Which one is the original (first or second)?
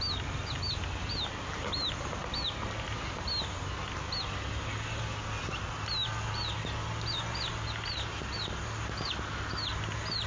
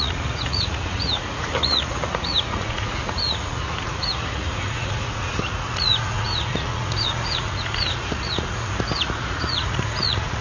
first